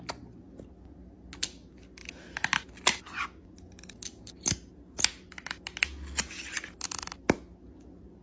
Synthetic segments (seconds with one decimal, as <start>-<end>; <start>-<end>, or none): none